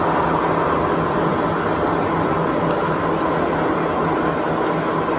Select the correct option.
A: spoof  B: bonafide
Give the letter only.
B